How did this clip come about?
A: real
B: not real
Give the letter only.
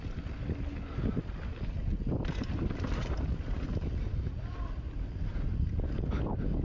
A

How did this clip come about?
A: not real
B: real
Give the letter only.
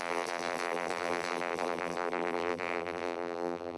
A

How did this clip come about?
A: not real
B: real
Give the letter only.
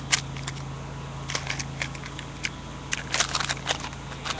B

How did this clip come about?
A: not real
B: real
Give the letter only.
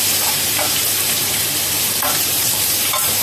A